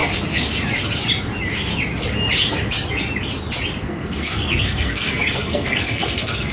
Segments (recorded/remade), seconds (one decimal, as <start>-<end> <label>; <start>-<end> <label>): 0.0-3.8 recorded; 3.8-6.5 remade